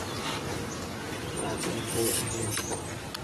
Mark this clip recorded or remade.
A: recorded